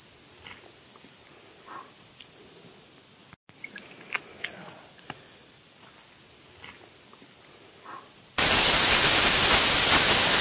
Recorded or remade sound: recorded